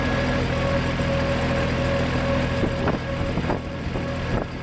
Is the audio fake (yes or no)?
no